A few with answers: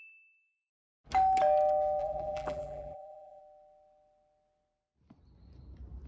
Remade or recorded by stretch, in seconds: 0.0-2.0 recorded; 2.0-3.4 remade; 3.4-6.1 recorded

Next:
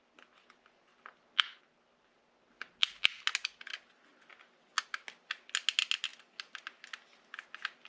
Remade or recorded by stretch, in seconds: 0.0-7.9 recorded